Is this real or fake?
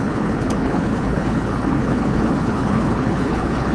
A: fake